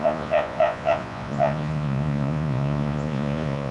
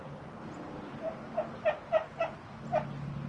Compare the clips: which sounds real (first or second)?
second